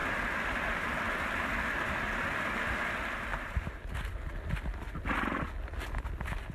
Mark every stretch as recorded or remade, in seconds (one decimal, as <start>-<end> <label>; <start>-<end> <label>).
0.0-3.3 recorded; 3.3-4.3 remade; 4.3-6.5 recorded